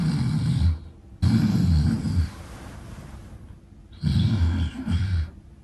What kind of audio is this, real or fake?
real